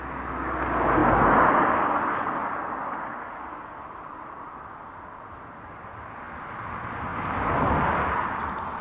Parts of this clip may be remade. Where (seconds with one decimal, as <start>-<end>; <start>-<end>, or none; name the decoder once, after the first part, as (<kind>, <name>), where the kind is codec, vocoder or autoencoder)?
none